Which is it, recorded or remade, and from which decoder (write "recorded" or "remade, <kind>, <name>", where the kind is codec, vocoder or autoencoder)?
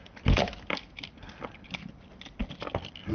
recorded